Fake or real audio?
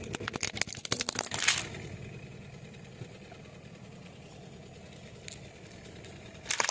real